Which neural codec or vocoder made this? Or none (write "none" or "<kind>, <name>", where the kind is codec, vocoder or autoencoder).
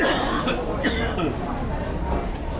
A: none